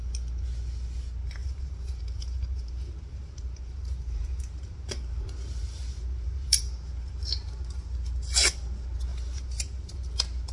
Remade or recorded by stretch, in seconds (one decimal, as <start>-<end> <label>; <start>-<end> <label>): 0.0-1.4 recorded; 1.4-6.6 remade; 6.6-9.1 recorded; 9.1-10.0 remade; 10.0-10.5 recorded